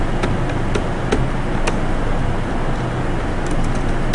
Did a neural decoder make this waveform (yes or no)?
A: no